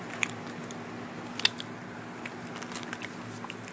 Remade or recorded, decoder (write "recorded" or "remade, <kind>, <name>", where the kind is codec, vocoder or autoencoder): recorded